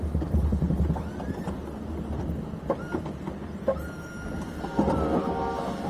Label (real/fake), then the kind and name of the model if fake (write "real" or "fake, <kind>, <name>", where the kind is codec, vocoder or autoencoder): real